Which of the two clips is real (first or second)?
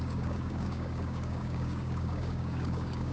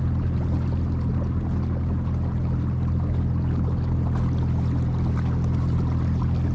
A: second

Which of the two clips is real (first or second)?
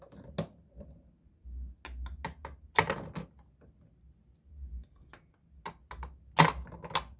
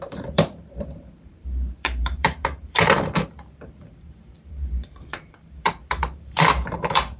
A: first